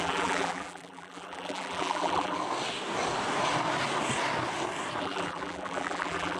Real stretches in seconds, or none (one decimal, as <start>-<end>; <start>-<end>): 2.4-5.0